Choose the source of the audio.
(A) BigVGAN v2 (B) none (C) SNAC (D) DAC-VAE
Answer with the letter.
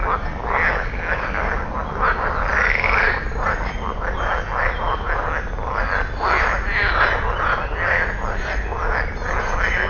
B